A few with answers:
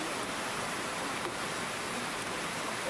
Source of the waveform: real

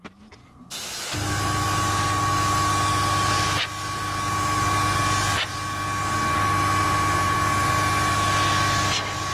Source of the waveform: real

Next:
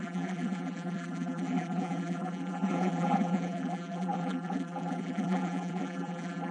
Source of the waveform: fake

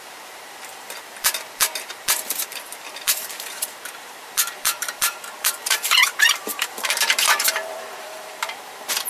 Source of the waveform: fake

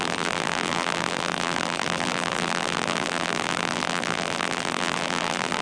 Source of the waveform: fake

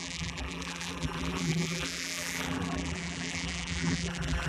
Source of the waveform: fake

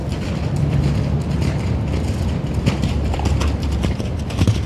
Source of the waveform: fake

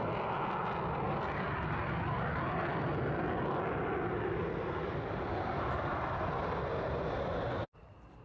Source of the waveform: real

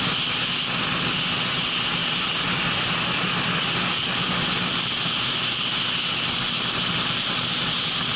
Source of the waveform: real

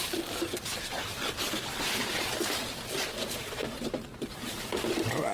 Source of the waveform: fake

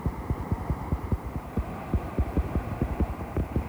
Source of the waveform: fake